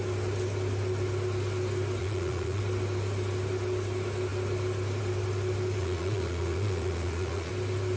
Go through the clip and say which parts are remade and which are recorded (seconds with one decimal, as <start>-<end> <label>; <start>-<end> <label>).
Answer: 0.0-2.0 recorded; 2.0-2.6 remade; 2.6-5.8 recorded; 5.8-7.5 remade; 7.5-8.0 recorded